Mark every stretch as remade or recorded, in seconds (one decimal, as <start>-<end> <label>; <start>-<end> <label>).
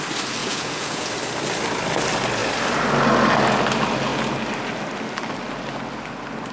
0.0-0.4 recorded; 0.4-1.1 remade; 1.1-6.5 recorded